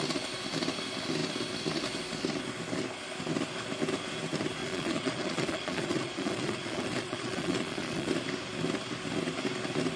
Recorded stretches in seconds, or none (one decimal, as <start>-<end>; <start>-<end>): 0.0-4.6; 8.1-10.0